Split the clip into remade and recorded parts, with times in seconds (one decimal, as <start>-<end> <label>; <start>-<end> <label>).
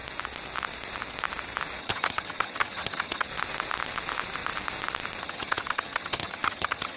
0.0-1.8 recorded; 1.8-3.3 remade; 3.3-5.2 recorded; 5.2-7.0 remade